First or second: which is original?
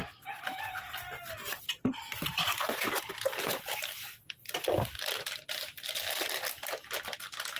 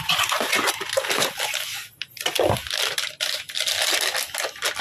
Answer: second